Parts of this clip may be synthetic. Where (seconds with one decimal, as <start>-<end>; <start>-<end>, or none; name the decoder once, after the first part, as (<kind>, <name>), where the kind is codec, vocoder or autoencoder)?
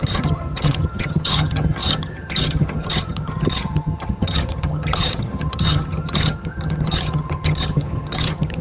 0.0-8.6 (vocoder, HiFi-GAN)